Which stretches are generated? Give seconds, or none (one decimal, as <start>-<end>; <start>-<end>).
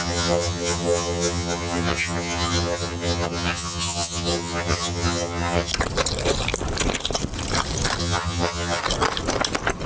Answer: 0.0-5.7; 8.0-8.8